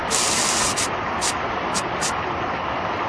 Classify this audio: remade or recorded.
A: recorded